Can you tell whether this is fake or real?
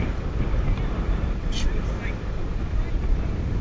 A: real